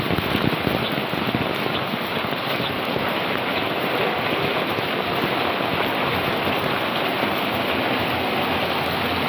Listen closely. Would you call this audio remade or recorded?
recorded